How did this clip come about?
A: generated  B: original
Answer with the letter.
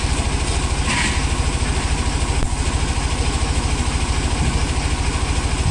B